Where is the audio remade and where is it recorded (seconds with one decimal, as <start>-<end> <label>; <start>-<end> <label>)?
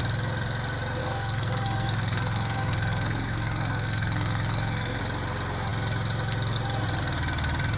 0.0-1.0 recorded; 1.0-5.0 remade; 5.0-7.8 recorded